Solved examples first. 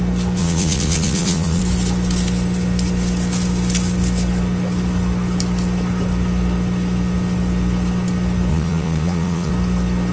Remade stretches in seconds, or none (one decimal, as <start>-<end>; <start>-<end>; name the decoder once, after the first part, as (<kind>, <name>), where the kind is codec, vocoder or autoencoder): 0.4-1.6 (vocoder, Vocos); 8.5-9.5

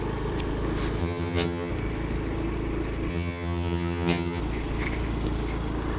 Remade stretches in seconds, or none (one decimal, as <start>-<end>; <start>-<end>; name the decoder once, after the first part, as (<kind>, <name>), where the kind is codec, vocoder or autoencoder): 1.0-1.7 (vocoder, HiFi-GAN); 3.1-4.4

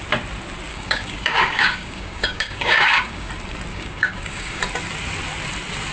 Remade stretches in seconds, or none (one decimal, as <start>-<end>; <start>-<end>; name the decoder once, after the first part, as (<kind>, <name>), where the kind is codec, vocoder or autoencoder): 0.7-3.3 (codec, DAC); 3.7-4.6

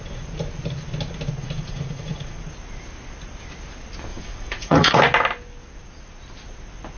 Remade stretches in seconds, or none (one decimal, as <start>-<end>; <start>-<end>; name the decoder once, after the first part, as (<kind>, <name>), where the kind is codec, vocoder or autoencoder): 1.4-2.4 (vocoder, Vocos); 4.1-5.0

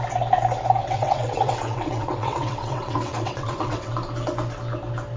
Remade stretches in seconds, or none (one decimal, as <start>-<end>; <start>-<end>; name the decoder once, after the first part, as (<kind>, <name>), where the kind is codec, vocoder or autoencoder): 0.8-3.9 (vocoder, WaveNeXt)

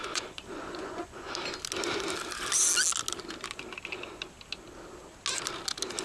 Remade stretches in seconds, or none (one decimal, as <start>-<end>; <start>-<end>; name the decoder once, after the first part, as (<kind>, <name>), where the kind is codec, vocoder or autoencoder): 0.0-1.3 (vocoder, Vocos)